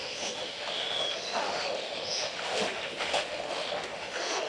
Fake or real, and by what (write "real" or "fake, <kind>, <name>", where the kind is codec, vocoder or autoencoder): fake, autoencoder, DAC-VAE